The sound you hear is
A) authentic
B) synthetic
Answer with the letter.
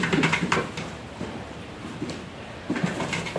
B